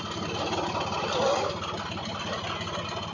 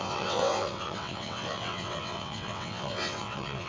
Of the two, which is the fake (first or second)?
second